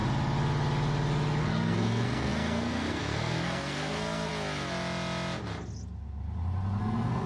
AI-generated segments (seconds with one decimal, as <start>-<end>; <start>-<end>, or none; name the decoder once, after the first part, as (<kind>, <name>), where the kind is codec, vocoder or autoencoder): 1.4-4.3 (codec, SNAC); 6.8-7.3